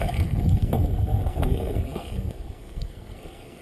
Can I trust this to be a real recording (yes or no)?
no